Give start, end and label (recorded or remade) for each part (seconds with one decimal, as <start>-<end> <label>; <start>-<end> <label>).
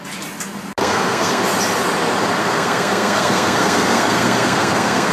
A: 0.0-0.8 recorded; 0.8-1.4 remade; 1.4-2.4 recorded; 2.4-5.1 remade